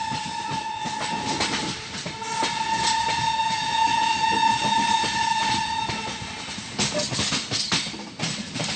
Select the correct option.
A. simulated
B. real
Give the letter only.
B